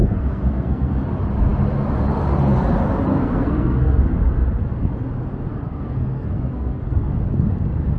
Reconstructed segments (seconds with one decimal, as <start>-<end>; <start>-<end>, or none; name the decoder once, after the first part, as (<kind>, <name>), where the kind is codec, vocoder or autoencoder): 0.0-0.9 (codec, SNAC); 3.1-4.0; 5.5-7.1